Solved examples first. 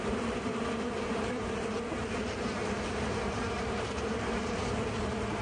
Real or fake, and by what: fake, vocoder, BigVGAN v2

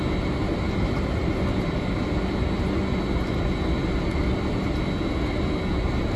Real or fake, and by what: real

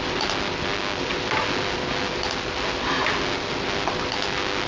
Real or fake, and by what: real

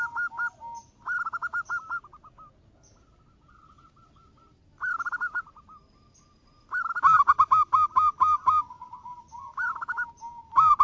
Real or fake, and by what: real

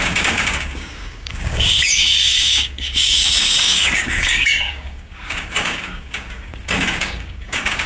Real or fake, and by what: fake, codec, DAC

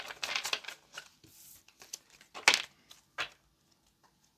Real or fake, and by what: real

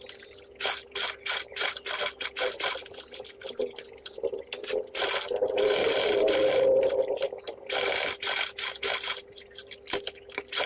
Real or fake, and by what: real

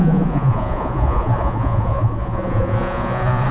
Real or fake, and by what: fake, vocoder, Vocos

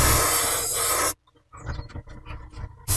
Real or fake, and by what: real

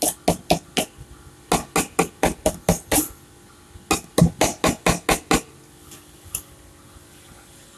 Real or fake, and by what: real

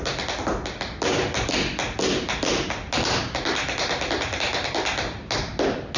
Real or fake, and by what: real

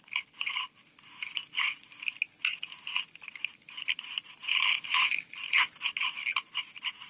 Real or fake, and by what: real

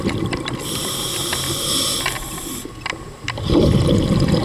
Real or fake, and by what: real